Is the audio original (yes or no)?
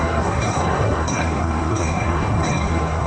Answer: no